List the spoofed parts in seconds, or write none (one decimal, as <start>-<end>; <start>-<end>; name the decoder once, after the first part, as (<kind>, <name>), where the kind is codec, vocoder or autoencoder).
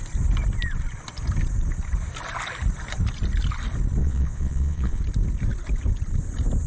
4.0-5.0 (vocoder, Vocos)